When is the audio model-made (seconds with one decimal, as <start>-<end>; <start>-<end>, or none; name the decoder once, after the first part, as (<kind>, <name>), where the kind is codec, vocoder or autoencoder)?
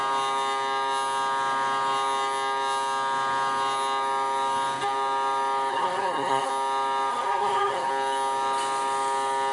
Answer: 5.7-6.5 (codec, SNAC); 7.1-7.9